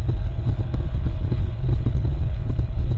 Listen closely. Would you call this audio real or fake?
fake